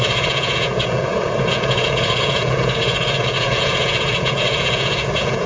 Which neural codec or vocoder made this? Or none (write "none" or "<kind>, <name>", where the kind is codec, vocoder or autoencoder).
vocoder, Vocos